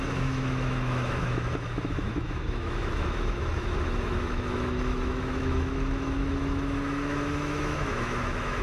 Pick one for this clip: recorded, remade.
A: remade